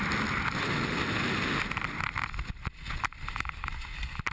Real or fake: real